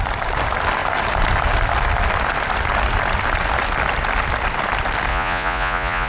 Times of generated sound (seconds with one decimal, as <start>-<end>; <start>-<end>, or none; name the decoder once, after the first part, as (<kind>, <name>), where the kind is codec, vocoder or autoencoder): 5.1-6.1 (vocoder, Vocos)